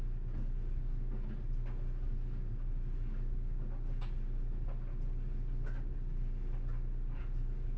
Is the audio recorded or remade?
recorded